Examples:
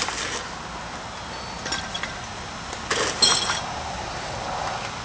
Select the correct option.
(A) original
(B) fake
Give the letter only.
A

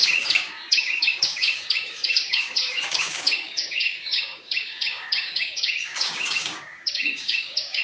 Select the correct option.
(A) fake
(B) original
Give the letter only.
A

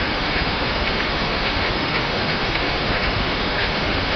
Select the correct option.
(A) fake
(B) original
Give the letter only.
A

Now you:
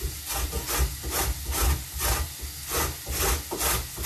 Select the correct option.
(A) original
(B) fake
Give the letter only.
A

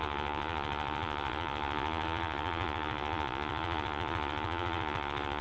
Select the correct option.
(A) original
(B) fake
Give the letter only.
B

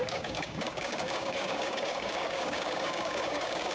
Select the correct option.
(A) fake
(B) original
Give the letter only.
A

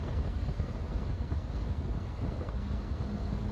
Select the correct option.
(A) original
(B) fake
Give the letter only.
B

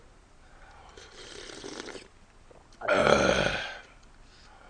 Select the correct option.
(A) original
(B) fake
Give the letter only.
A